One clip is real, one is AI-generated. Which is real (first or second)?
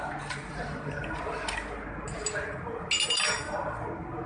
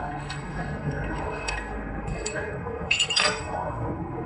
first